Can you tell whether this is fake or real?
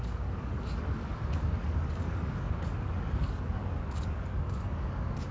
fake